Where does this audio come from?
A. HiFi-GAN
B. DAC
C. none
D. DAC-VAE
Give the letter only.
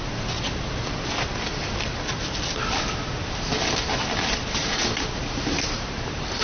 C